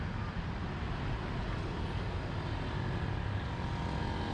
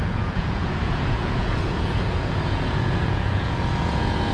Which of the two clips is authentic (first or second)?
first